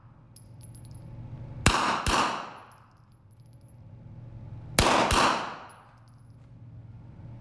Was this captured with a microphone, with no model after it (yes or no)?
yes